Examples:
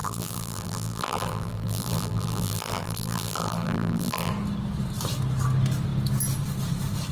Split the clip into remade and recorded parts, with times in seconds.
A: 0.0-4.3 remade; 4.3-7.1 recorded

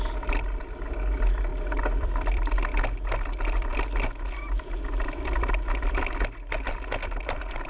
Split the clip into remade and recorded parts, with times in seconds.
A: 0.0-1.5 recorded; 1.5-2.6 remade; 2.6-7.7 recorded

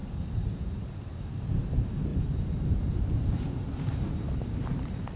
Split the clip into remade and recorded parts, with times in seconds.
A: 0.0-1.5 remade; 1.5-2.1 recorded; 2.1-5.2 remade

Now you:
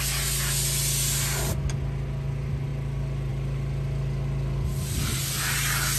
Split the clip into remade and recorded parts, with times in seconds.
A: 0.0-6.0 recorded

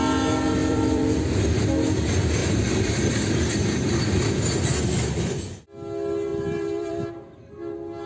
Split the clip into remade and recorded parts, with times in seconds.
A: 0.0-0.6 recorded; 0.6-1.1 remade; 1.1-2.4 recorded; 2.4-4.3 remade; 4.3-6.3 recorded; 6.3-7.1 remade; 7.1-8.1 recorded

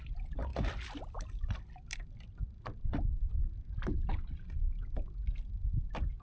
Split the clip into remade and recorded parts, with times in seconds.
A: 0.0-6.2 recorded